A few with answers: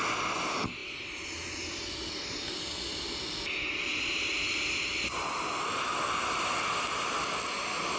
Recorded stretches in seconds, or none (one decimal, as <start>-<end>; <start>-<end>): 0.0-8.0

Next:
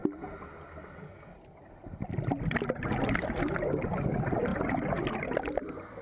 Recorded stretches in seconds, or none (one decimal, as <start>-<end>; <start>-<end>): 0.0-6.0

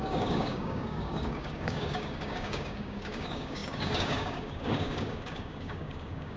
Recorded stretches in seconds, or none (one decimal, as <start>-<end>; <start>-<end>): none